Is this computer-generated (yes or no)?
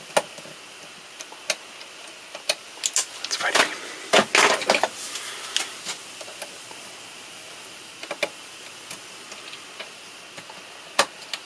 no